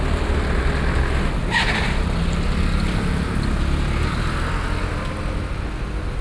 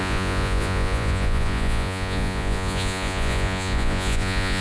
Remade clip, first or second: second